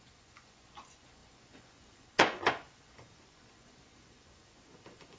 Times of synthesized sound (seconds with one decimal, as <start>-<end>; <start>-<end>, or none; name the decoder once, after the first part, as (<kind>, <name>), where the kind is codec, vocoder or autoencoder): 0.0-5.2 (vocoder, Vocos)